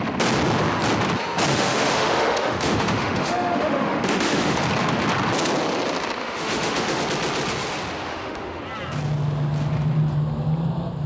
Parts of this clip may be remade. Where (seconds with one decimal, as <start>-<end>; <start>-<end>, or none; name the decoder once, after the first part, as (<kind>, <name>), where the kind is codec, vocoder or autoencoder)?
1.5-4.6 (autoencoder, DAC-VAE); 6.2-7.0; 8.1-8.6